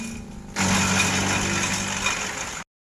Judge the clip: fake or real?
real